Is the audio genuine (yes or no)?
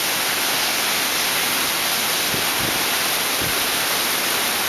yes